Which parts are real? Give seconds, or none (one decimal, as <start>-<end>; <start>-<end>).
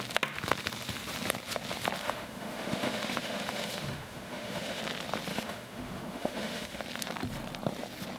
0.0-2.0; 4.8-5.3; 6.8-8.2